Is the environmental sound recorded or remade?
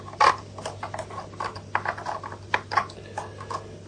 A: recorded